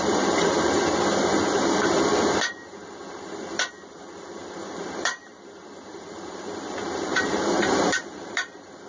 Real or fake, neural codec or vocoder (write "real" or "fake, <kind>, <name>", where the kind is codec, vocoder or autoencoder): fake, vocoder, BigVGAN v2